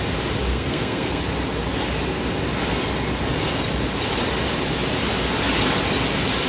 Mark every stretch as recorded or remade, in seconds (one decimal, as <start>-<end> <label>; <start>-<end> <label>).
0.0-0.5 recorded; 0.5-1.2 remade; 1.2-6.5 recorded